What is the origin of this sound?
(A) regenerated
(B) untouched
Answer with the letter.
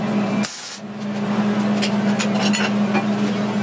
B